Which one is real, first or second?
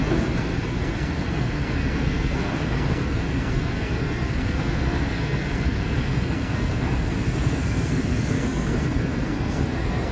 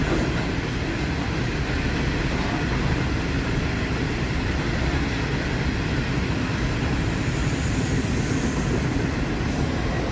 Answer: second